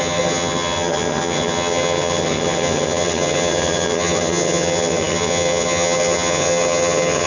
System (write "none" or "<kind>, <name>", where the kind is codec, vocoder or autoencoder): vocoder, HiFi-GAN